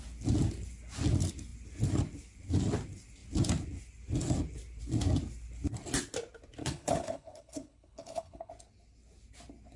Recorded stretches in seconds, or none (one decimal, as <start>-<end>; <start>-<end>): 0.0-6.6; 8.5-9.8